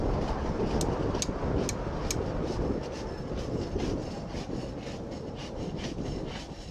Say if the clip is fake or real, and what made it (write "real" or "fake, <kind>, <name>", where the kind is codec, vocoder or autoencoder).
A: real